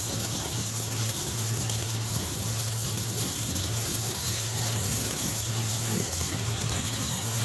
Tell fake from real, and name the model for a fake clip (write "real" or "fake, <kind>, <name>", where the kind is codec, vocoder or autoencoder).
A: fake, codec, SNAC